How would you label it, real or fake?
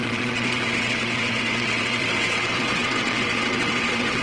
fake